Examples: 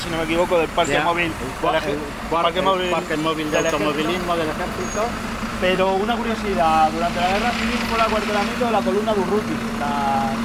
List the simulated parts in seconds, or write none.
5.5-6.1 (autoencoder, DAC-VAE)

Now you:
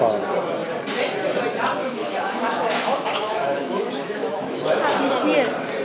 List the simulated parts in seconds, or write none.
1.8-4.8 (autoencoder, DAC-VAE)

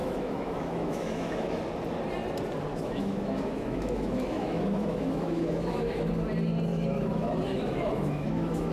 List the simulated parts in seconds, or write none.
0.0-1.6 (autoencoder, DAC-VAE); 2.7-6.1; 6.7-8.7

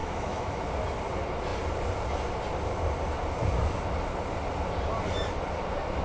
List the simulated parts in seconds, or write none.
0.0-0.7 (autoencoder, DAC-VAE)

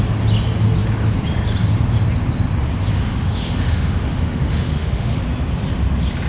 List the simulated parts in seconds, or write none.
2.9-5.2 (autoencoder, DAC-VAE)